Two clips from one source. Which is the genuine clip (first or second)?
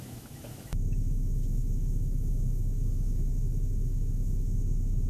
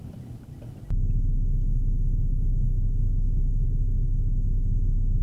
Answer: second